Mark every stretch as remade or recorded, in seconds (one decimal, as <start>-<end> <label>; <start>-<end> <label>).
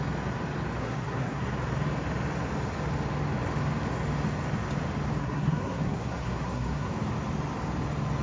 0.0-0.8 recorded; 0.8-1.5 remade; 1.5-5.2 recorded; 5.2-6.9 remade; 6.9-8.2 recorded